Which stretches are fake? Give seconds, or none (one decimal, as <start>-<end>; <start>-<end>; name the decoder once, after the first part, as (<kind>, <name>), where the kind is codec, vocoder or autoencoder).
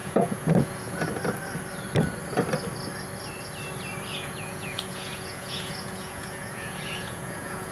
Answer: 0.0-1.1 (vocoder, Vocos); 4.1-7.7